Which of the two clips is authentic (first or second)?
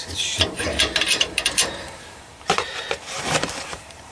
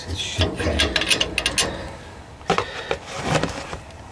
second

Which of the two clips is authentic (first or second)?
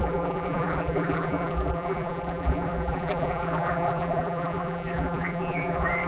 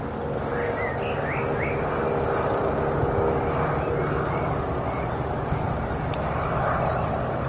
second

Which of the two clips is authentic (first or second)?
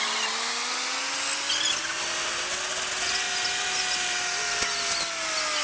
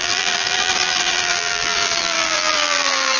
first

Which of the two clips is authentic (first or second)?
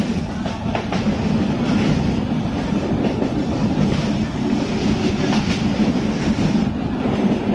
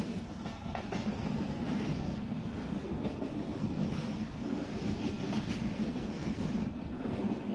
first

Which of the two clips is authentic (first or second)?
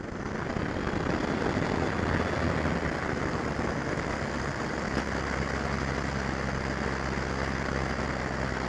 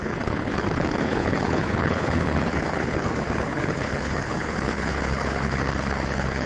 first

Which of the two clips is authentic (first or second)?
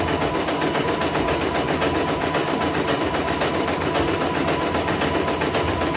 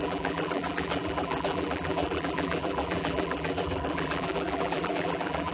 first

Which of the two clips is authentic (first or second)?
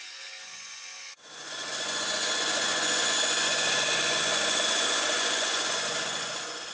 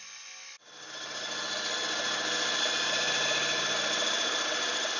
second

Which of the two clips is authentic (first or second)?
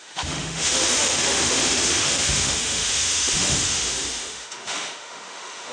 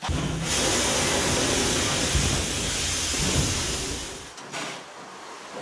second